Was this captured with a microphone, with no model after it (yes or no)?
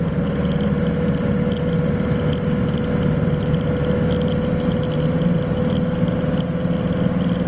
yes